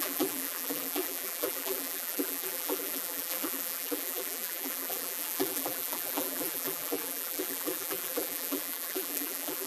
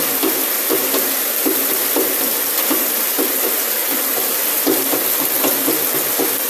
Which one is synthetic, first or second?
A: first